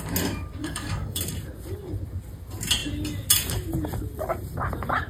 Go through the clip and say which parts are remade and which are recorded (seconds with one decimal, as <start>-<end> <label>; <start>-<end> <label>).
0.0-0.6 recorded; 0.6-1.2 remade; 1.2-5.1 recorded